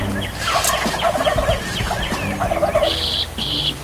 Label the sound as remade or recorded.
recorded